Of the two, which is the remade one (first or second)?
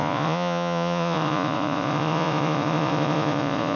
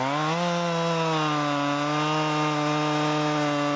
first